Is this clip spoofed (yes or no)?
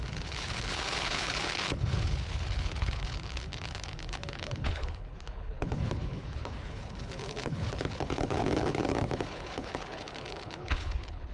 yes